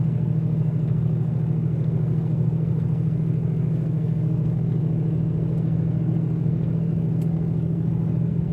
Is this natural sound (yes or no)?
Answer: no